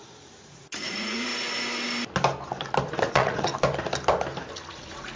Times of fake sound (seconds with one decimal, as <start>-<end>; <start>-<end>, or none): 0.0-1.3; 3.1-3.5; 4.7-5.2